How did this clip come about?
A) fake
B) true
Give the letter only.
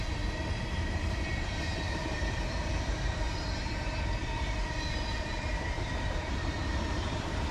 A